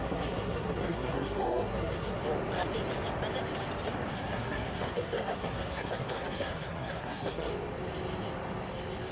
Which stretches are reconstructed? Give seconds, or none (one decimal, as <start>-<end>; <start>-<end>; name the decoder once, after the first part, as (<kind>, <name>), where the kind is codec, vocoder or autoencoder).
0.0-2.2 (codec, SNAC); 4.1-7.5